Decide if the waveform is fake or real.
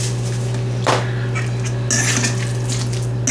real